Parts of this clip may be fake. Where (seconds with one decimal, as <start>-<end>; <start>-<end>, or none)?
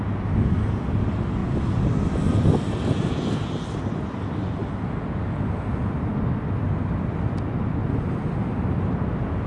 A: none